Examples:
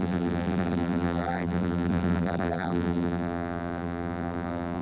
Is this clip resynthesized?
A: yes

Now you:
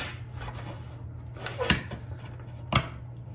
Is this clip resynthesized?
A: no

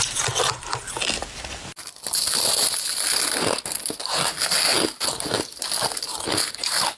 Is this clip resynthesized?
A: no